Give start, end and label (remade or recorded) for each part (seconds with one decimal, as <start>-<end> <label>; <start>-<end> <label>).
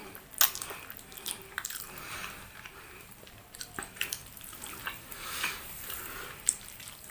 0.0-1.5 recorded; 1.5-4.2 remade; 4.2-4.8 recorded; 4.8-7.1 remade